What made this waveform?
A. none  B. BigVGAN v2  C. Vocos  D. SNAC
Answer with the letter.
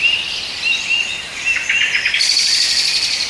A